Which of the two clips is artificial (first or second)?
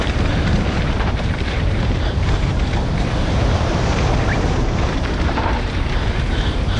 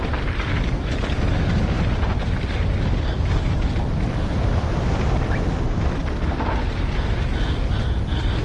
first